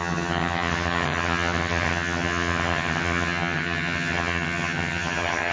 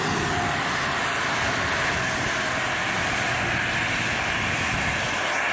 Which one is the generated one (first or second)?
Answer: first